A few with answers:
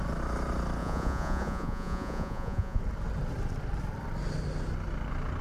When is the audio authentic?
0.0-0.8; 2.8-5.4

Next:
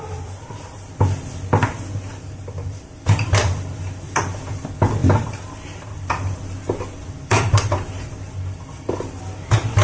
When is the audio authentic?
none

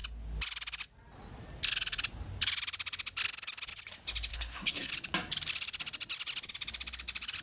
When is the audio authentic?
0.0-4.3; 4.9-7.4

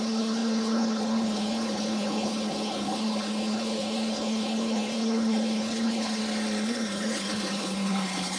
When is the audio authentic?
6.2-6.7

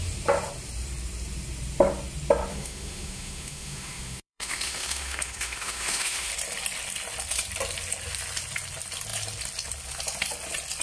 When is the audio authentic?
0.0-2.5; 6.3-10.8

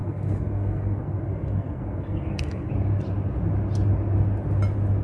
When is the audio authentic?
2.7-5.0

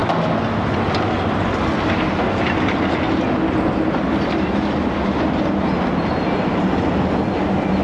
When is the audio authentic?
0.0-7.8

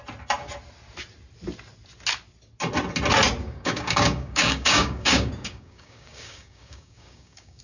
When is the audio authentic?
0.0-3.4